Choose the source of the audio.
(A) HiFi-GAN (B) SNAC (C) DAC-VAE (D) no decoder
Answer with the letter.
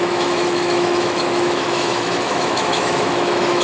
C